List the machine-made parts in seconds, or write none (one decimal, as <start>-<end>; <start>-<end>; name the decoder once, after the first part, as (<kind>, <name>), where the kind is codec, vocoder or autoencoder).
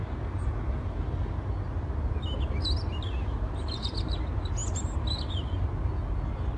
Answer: none